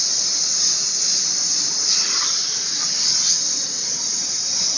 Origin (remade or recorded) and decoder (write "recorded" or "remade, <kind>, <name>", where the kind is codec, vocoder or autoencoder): recorded